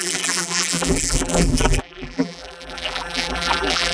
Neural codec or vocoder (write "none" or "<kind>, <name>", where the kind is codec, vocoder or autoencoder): vocoder, BigVGAN v2